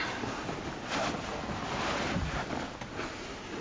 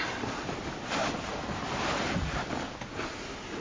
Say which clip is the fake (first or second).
second